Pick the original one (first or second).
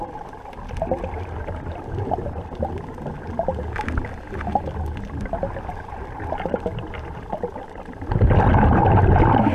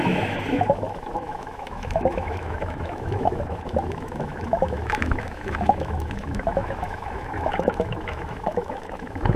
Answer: first